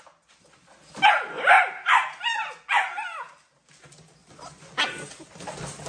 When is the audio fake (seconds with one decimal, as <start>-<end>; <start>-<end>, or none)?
none